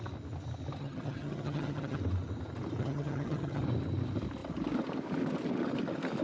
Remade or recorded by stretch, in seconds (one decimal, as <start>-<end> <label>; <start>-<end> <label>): 0.0-0.8 recorded; 0.8-2.0 remade; 2.0-2.8 recorded; 2.8-3.6 remade; 3.6-6.2 recorded

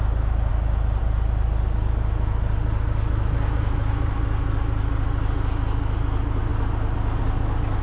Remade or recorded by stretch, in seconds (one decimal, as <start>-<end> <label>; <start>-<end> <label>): 0.0-7.8 recorded

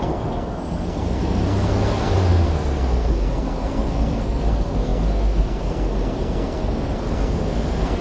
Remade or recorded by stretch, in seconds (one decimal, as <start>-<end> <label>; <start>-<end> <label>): 0.0-8.0 remade